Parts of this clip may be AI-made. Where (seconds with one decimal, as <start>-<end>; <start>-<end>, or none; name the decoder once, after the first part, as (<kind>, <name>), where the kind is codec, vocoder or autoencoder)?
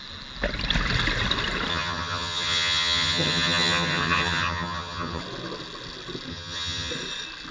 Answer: 1.7-5.2 (vocoder, HiFi-GAN); 6.3-6.9